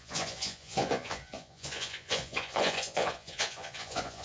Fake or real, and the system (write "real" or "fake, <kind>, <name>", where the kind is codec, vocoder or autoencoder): fake, vocoder, Vocos